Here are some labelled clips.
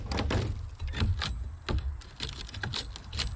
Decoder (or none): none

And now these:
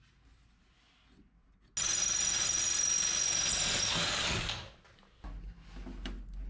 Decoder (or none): none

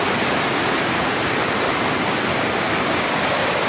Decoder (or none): none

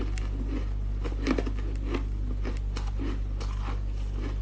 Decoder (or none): none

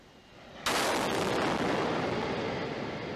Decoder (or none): none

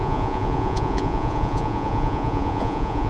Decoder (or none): vocoder, Vocos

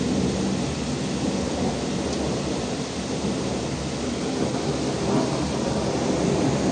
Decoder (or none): none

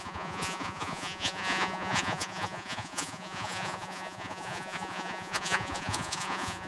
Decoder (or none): vocoder, Vocos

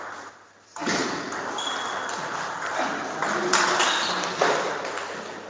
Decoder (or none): none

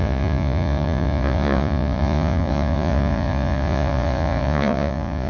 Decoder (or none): vocoder, Vocos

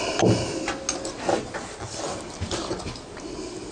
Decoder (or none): none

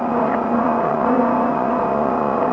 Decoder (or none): vocoder, Vocos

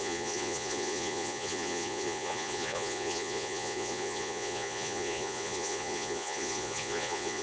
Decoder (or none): vocoder, Vocos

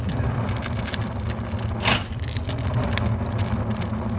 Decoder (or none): none